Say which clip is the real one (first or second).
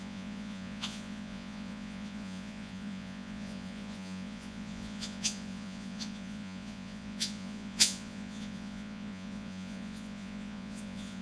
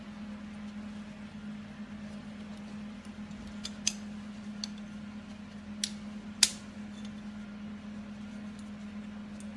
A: second